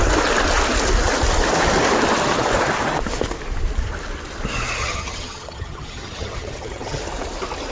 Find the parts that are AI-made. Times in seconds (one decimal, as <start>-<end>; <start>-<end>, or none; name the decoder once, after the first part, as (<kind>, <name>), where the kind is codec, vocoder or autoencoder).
4.8-7.0 (vocoder, HiFi-GAN)

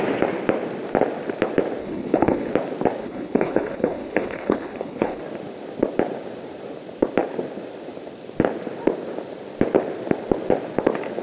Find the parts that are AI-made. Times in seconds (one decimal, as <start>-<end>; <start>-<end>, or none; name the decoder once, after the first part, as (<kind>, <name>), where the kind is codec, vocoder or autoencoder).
1.8-2.5 (codec, HILCodec); 3.0-5.2

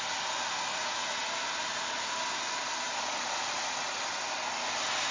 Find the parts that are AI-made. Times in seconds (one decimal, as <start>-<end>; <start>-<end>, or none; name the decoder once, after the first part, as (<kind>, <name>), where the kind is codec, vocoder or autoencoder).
0.7-1.3 (vocoder, Vocos); 3.0-3.9

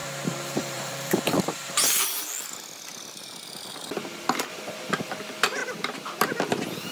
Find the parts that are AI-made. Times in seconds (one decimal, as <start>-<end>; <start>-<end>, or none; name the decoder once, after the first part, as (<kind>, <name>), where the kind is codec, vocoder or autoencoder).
0.0-2.0 (vocoder, BigVGAN v2)

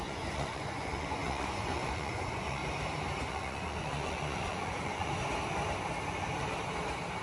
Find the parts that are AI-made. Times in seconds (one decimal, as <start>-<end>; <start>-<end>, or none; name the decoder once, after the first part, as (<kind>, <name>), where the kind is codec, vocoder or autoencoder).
0.0-2.6 (vocoder, Vocos); 3.3-5.1

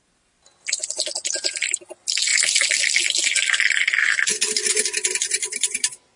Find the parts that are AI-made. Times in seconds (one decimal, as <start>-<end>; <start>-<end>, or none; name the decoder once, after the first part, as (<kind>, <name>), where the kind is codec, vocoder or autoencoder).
none

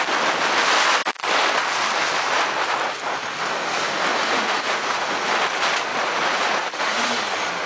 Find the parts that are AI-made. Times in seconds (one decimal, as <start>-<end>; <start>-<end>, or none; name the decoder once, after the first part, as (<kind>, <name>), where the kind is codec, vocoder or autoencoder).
4.1-5.2 (vocoder, Vocos); 5.9-7.2